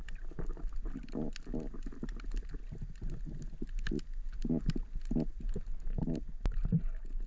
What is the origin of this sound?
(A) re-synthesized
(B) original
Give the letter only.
B